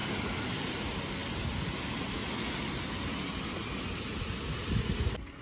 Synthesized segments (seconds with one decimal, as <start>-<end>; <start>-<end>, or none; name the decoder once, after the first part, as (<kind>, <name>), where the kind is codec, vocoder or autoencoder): none